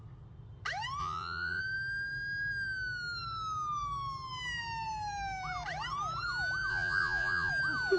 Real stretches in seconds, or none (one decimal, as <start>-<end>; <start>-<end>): 0.0-1.0; 1.6-6.7; 7.5-8.0